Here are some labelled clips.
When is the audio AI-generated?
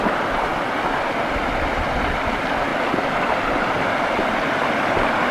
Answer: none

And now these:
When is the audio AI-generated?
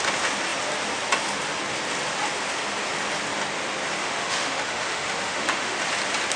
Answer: 4.0-5.8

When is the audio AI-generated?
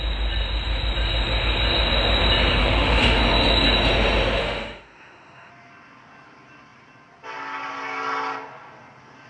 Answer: 2.6-3.2; 4.4-5.5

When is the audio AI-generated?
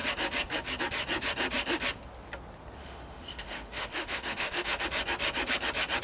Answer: 2.8-4.8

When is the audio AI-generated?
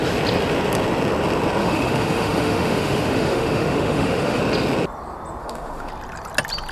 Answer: 1.6-4.4; 5.4-5.9